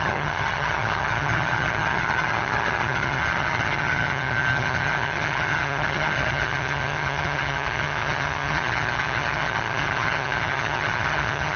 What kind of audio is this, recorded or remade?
remade